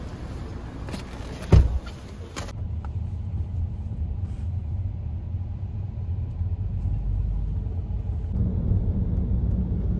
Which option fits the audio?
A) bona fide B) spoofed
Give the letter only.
A